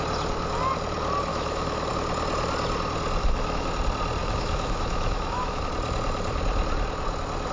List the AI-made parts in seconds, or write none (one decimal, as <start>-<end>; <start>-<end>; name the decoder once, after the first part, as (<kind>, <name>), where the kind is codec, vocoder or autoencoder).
1.3-1.9 (autoencoder, DAC-VAE); 3.2-3.7; 4.2-5.6